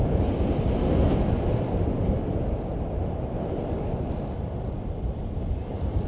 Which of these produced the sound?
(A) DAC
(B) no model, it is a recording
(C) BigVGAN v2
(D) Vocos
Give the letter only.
B